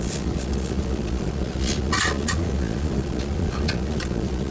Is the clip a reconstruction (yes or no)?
yes